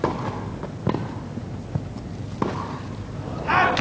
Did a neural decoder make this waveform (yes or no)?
no